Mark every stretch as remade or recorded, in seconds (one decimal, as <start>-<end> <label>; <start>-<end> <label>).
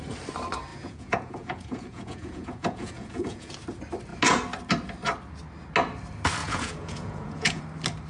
0.0-0.7 recorded; 0.7-3.5 remade; 3.5-6.4 recorded; 6.4-7.6 remade; 7.6-8.1 recorded